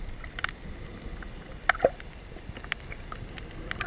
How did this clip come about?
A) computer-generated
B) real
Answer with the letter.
B